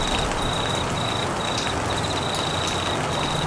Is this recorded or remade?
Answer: recorded